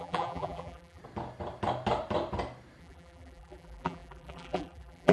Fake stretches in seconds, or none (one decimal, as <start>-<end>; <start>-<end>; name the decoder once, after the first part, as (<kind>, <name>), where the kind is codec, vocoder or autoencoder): 0.0-1.0 (vocoder, BigVGAN v2); 2.8-5.1